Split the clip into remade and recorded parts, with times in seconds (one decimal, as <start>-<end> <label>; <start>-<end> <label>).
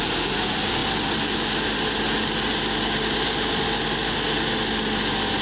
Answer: 0.0-5.4 recorded